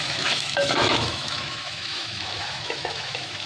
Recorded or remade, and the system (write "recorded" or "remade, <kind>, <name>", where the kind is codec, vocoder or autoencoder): remade, autoencoder, DAC-VAE